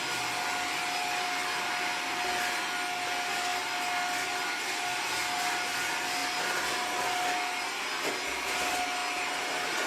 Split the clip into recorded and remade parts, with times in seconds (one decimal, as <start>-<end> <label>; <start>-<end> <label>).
0.0-9.9 recorded